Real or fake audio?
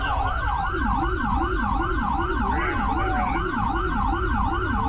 real